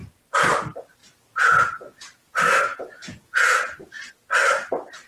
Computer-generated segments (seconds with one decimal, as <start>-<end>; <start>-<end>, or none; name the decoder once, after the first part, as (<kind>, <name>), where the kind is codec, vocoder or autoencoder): 1.0-4.1 (vocoder, Vocos)